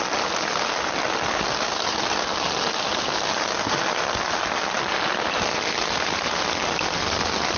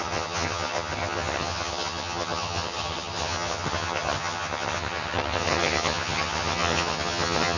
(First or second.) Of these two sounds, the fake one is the second